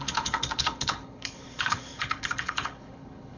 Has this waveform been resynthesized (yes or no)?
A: yes